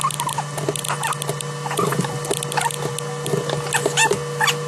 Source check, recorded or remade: recorded